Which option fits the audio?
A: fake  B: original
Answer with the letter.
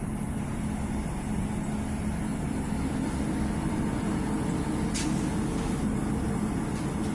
B